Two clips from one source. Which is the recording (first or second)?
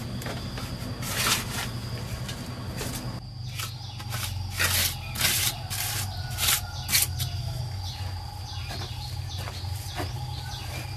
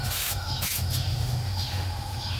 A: first